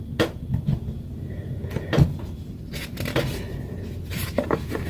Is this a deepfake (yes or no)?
no